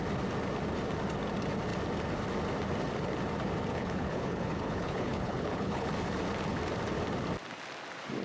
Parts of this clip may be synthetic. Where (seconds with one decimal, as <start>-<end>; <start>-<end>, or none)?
3.7-5.9